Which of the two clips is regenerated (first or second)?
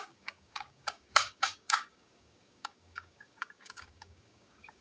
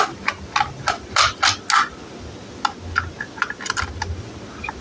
first